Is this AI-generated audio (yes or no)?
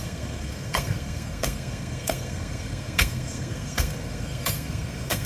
yes